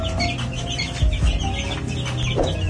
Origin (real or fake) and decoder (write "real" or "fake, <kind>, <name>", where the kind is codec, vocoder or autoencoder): real